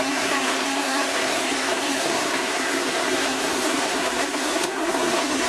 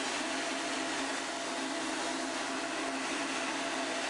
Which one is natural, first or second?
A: second